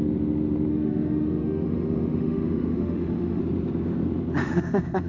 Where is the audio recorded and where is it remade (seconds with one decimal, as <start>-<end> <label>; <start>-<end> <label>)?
0.0-0.7 recorded; 0.7-3.4 remade; 3.4-4.4 recorded; 4.4-5.1 remade